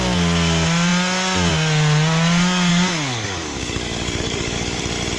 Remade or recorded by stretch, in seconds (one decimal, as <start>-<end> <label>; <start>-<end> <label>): 0.0-2.7 recorded; 2.7-4.8 remade; 4.8-5.2 recorded